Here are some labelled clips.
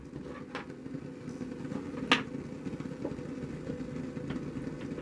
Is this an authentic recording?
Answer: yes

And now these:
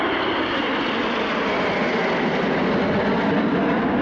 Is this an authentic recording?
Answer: yes